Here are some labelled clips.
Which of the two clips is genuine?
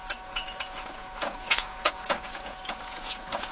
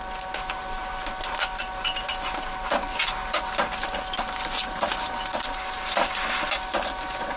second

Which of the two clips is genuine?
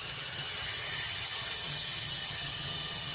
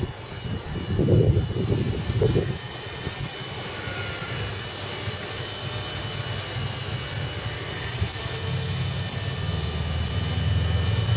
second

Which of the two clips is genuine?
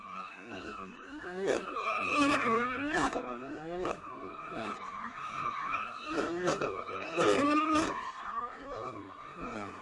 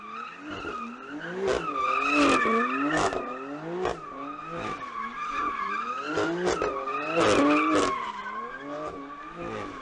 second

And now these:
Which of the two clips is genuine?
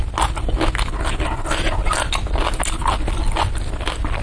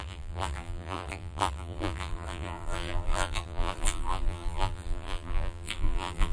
first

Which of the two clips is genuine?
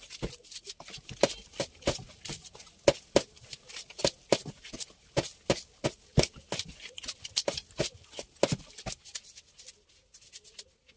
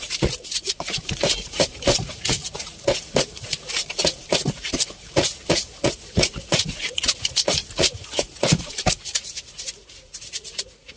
first